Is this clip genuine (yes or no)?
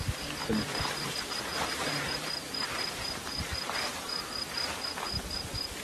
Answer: no